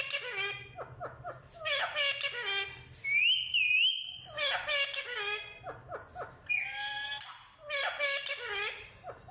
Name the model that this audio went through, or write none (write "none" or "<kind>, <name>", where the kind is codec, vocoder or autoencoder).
none